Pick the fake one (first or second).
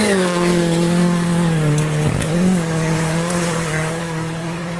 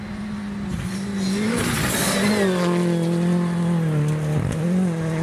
first